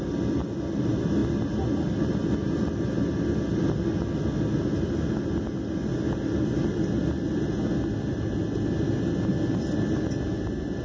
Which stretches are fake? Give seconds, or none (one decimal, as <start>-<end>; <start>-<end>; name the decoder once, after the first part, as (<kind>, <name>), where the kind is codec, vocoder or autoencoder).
none